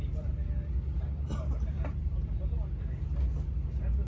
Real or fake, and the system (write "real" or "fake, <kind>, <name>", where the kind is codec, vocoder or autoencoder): real